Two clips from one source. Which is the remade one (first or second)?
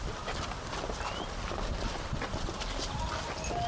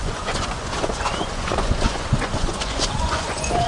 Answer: second